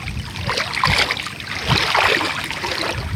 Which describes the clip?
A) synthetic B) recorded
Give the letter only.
B